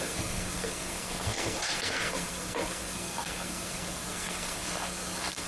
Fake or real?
fake